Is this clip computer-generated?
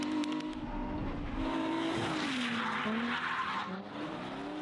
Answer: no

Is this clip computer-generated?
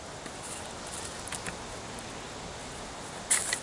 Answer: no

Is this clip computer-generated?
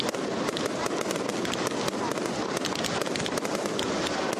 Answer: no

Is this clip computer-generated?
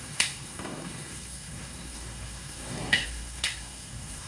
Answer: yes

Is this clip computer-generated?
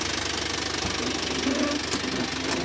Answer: no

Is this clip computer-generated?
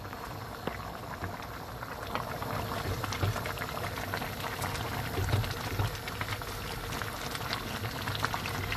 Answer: no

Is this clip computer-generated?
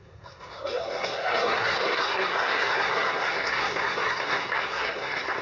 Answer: yes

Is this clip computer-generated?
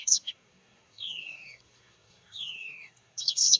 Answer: yes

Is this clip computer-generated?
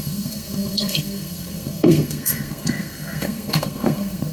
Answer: yes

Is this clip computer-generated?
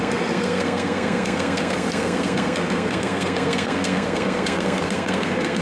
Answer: yes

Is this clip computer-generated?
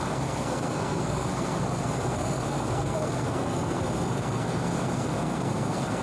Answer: yes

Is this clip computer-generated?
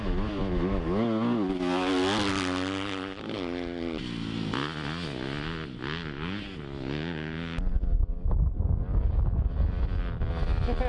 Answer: no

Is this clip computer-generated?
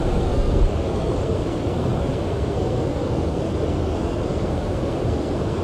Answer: yes